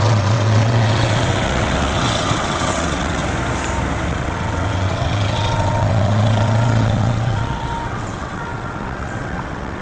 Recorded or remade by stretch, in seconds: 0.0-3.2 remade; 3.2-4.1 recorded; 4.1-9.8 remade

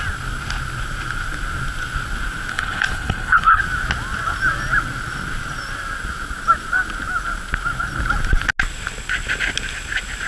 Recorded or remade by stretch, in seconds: 0.0-2.5 recorded; 2.5-3.6 remade; 3.6-10.3 recorded

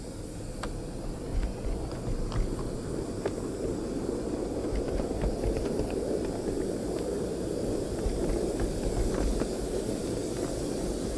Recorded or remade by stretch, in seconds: 0.0-1.3 recorded; 1.3-2.0 remade; 2.0-11.2 recorded

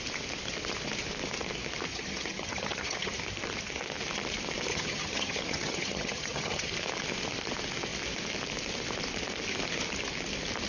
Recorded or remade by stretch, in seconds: 0.0-1.9 recorded; 1.9-3.1 remade; 3.1-4.7 recorded; 4.7-6.7 remade; 6.7-10.7 recorded

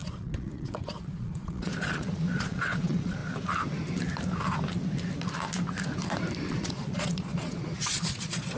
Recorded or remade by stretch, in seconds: 0.0-3.2 remade; 3.2-6.5 recorded; 6.5-8.6 remade

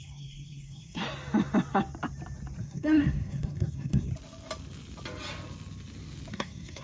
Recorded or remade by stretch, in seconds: 0.0-1.0 remade; 1.0-2.6 recorded; 2.6-4.1 remade; 4.1-6.3 recorded; 6.3-6.8 remade

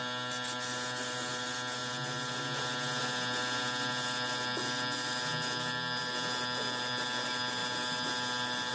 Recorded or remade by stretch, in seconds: 0.0-8.7 recorded